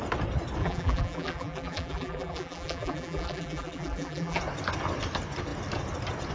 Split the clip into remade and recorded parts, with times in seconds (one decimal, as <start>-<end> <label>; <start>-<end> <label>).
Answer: 0.0-0.6 recorded; 0.6-4.4 remade; 4.4-6.3 recorded